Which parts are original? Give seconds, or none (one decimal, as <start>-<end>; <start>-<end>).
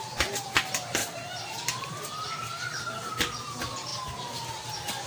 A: 0.0-1.0; 2.6-5.1